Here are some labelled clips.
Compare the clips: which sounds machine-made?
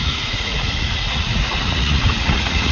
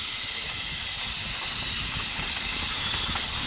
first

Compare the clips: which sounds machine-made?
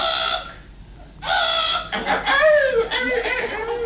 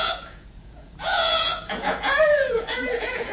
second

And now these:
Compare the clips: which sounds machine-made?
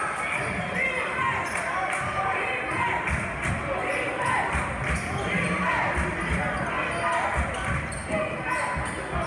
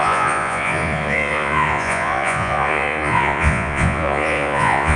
second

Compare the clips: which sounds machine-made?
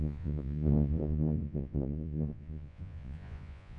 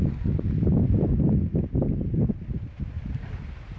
first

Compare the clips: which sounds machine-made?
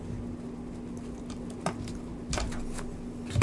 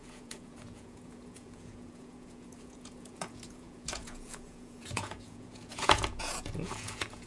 second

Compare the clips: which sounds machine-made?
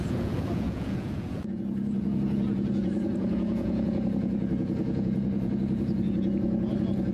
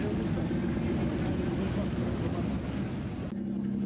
first